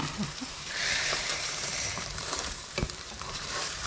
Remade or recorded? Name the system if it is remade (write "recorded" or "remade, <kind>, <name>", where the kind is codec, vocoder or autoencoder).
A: remade, vocoder, BigVGAN v2